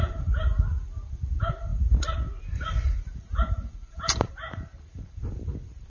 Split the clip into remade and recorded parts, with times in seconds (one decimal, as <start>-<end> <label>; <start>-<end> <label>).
0.0-5.9 remade